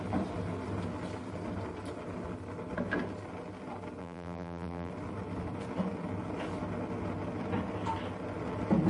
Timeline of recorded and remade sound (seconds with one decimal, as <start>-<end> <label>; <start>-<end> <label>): 0.0-4.0 recorded; 4.0-4.9 remade; 4.9-8.9 recorded